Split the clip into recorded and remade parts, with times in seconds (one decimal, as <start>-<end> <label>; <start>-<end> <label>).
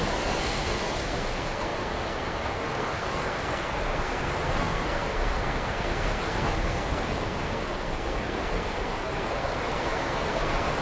0.0-10.8 remade